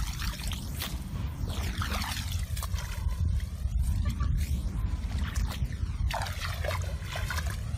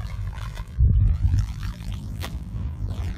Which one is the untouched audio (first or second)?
first